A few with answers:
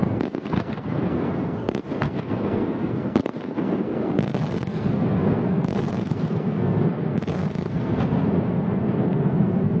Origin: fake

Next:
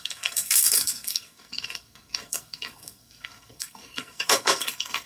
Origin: fake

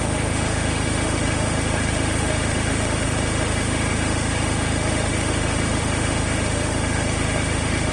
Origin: fake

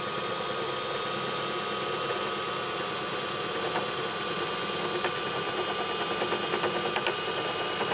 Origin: real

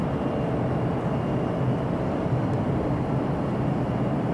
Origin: real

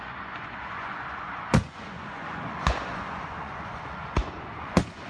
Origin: fake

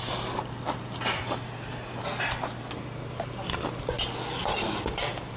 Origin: real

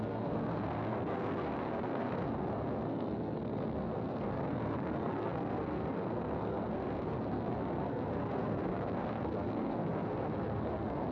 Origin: fake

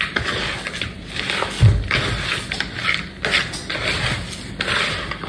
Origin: real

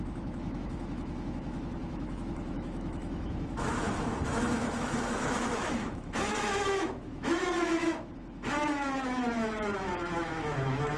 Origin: fake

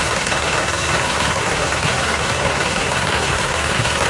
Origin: fake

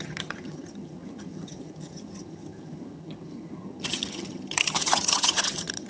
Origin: fake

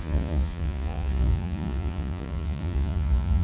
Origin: fake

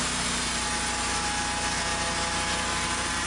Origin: real